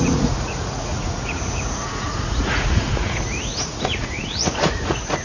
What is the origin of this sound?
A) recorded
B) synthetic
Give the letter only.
B